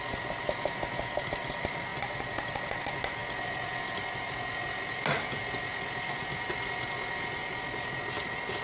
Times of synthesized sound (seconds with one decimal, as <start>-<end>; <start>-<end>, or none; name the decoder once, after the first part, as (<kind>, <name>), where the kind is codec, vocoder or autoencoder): none